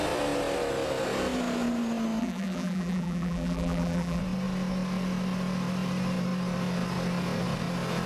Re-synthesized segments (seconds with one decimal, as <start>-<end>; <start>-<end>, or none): 2.2-4.2